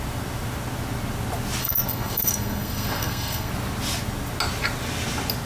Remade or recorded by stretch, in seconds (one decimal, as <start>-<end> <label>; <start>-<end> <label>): 0.0-1.6 recorded; 1.6-3.5 remade; 3.5-5.5 recorded